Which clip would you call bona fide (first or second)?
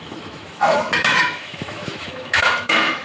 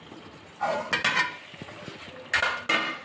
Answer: second